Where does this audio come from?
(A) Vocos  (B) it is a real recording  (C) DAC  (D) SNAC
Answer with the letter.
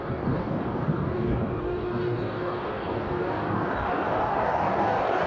C